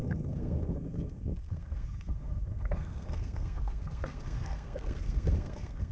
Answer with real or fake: fake